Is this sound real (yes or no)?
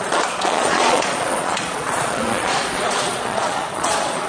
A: no